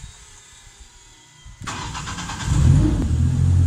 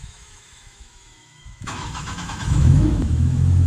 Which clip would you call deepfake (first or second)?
second